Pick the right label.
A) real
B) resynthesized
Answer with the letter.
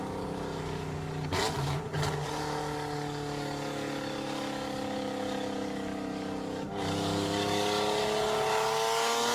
B